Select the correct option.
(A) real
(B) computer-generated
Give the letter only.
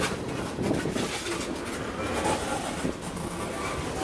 A